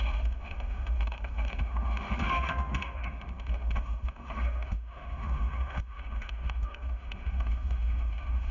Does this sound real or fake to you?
fake